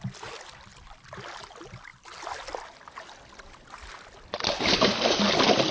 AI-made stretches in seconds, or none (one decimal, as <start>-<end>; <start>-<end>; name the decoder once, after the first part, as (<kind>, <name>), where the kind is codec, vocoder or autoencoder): none

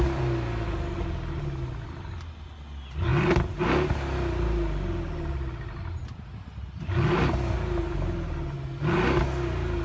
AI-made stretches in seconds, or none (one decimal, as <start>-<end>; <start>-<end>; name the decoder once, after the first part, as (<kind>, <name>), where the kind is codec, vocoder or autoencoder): none

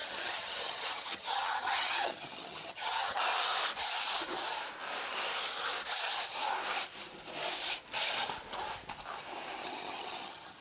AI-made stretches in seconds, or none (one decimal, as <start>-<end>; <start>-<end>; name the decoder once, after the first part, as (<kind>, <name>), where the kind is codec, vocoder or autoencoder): 0.0-3.2 (vocoder, HiFi-GAN); 9.6-10.6

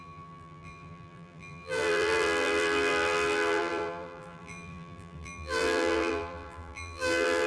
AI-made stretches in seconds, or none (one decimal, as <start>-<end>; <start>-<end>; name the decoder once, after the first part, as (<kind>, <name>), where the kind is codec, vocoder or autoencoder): 0.0-7.5 (vocoder, BigVGAN v2)

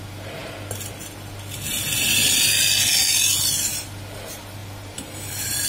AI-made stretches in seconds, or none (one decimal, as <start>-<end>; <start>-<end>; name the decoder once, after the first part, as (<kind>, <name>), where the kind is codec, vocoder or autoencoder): 4.6-5.3 (vocoder, BigVGAN v2)

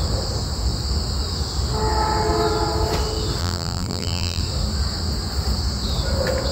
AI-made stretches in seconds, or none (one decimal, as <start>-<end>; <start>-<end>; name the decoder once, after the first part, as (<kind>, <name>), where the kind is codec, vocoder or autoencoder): 3.4-4.4 (vocoder, BigVGAN v2)

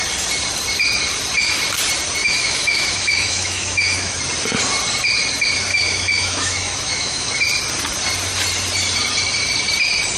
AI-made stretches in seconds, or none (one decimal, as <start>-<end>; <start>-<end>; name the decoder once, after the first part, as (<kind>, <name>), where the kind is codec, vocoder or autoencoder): 2.2-4.2 (autoencoder, DAC-VAE); 5.7-7.3